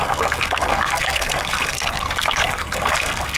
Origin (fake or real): fake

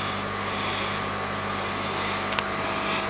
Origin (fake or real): real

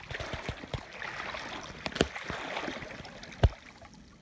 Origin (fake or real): real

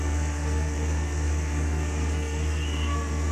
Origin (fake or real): fake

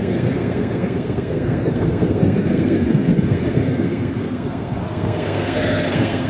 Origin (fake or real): fake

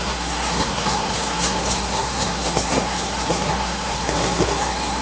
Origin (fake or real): fake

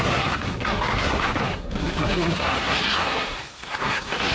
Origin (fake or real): fake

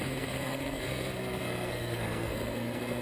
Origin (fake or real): fake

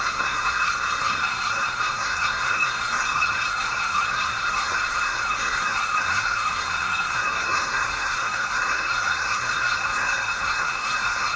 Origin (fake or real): fake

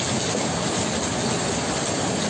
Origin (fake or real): real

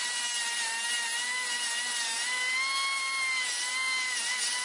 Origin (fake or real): real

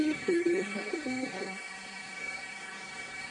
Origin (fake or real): fake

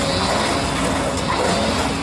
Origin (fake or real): real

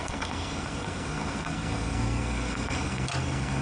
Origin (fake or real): fake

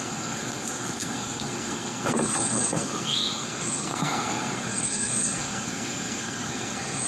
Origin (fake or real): fake